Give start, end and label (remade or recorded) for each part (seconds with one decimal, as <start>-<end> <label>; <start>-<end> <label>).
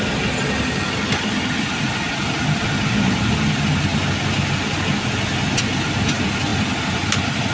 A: 0.0-7.5 recorded